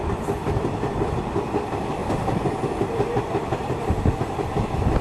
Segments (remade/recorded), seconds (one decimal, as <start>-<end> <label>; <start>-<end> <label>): 0.0-0.4 recorded; 0.4-0.9 remade; 0.9-2.0 recorded; 2.0-4.1 remade; 4.1-5.0 recorded